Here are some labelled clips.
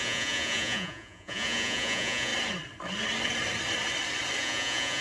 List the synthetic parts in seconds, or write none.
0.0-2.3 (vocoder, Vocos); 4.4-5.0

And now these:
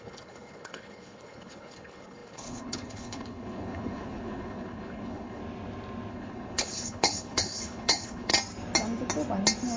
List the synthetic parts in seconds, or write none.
0.0-5.4 (codec, HILCodec); 6.1-8.3

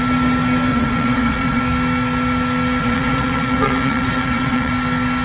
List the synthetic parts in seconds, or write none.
0.7-1.6 (vocoder, WaveNeXt); 2.8-4.7